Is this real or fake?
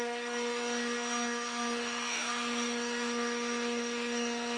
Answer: fake